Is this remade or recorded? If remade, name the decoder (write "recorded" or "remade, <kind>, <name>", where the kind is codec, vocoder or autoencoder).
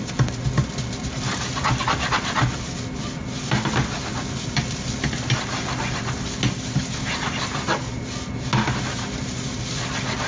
recorded